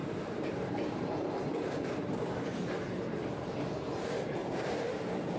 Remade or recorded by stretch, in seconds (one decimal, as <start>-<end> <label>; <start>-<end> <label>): 0.0-3.0 remade; 3.0-4.4 recorded; 4.4-4.9 remade; 4.9-5.4 recorded